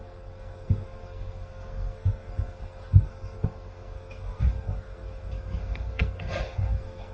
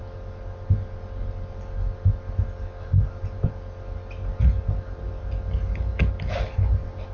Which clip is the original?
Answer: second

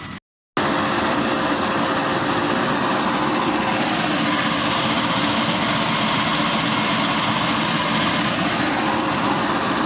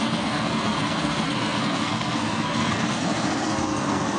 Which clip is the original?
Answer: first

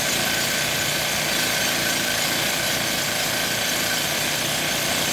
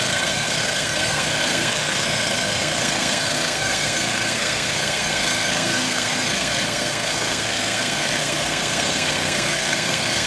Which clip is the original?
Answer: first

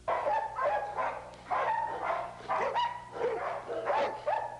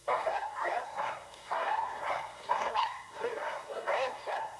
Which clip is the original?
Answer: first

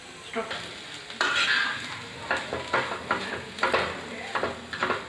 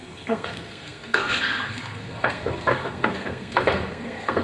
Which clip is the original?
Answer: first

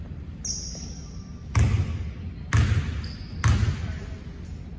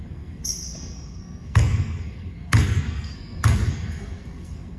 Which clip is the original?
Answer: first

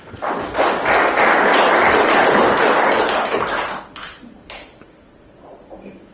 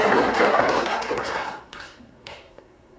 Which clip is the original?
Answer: first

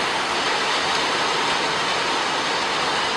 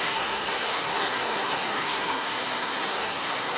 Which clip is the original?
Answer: first